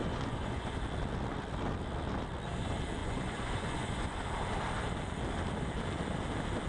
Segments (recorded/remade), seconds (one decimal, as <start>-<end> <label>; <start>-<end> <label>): 0.0-0.7 remade; 0.7-3.0 recorded; 3.0-4.2 remade; 4.2-6.7 recorded